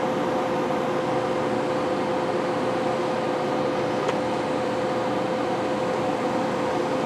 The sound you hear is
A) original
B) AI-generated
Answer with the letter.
A